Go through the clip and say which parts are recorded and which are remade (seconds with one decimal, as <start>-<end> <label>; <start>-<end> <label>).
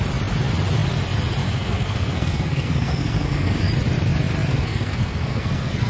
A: 0.0-1.4 recorded; 1.4-3.7 remade; 3.7-4.5 recorded; 4.5-5.9 remade